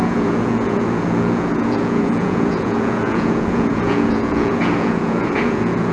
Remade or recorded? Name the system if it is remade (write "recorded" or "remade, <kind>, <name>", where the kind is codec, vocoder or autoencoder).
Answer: remade, vocoder, Vocos